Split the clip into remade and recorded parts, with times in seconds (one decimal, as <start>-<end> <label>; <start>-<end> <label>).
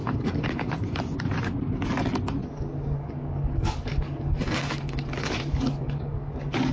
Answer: 0.0-0.7 remade; 0.7-2.4 recorded; 2.4-6.7 remade